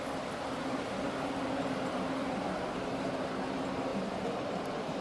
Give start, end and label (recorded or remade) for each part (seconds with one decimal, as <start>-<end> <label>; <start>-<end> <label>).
0.0-0.6 recorded; 0.6-2.9 remade; 2.9-3.9 recorded; 3.9-5.0 remade